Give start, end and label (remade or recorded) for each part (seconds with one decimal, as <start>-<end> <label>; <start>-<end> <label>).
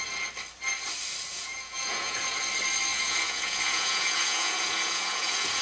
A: 0.0-1.3 recorded; 1.3-2.2 remade; 2.2-2.9 recorded; 2.9-5.6 remade